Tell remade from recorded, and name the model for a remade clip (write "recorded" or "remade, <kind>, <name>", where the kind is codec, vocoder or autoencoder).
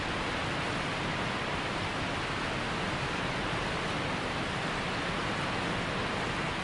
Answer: recorded